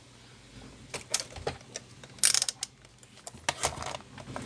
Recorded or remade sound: recorded